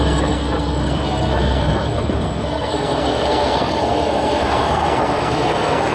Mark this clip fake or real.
fake